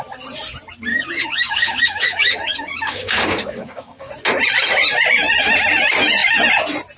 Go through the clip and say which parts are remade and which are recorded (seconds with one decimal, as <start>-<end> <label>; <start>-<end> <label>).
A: 0.0-0.9 recorded; 0.9-4.1 remade; 4.1-7.0 recorded